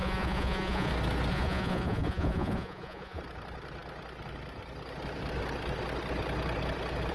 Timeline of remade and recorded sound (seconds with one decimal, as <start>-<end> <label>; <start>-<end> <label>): 0.0-0.9 remade; 0.9-1.3 recorded; 1.3-3.2 remade; 3.2-7.1 recorded